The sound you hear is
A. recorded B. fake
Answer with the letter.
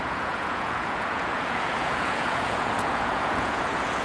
B